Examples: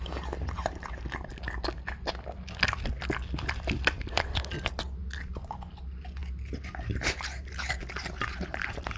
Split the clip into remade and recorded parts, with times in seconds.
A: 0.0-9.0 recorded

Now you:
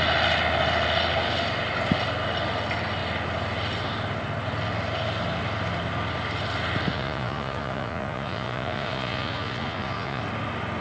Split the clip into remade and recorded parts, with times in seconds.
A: 0.0-6.9 recorded; 6.9-10.2 remade; 10.2-10.8 recorded

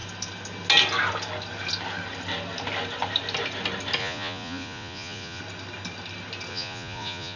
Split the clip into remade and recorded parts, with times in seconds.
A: 0.0-4.0 recorded; 4.0-5.4 remade; 5.4-6.5 recorded; 6.5-7.4 remade

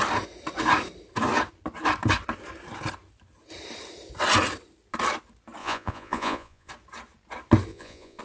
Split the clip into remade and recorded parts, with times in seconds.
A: 0.0-5.6 recorded; 5.6-6.7 remade; 6.7-7.7 recorded; 7.7-8.2 remade

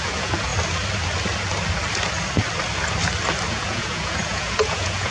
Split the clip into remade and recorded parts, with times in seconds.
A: 0.0-0.5 remade; 0.5-3.5 recorded; 3.5-5.1 remade

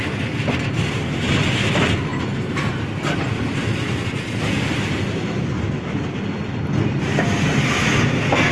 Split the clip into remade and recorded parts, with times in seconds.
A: 0.0-8.5 recorded